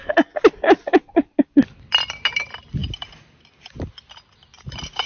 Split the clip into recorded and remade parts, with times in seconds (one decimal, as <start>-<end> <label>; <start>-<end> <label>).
0.0-5.1 recorded